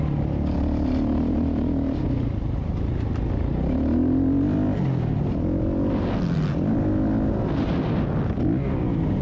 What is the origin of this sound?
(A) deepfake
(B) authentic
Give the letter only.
B